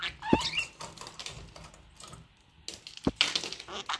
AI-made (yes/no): no